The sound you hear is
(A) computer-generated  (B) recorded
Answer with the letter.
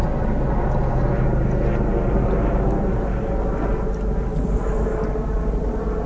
B